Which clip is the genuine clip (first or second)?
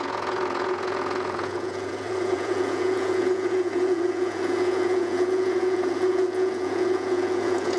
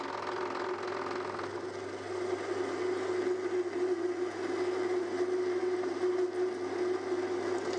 second